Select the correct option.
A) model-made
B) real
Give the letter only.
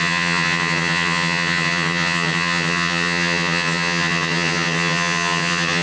A